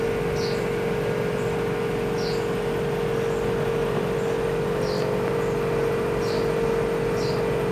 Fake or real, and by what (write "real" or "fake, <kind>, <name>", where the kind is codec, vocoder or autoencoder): real